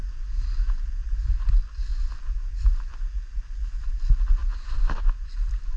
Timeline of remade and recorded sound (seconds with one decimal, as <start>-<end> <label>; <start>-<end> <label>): 0.0-5.8 recorded